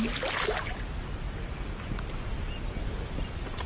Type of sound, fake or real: real